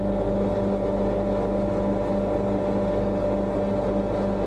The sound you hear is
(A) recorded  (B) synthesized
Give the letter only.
A